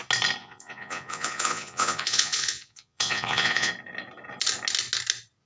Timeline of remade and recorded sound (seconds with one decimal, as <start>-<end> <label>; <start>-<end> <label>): 0.0-0.4 recorded; 0.4-3.7 remade; 3.7-5.5 recorded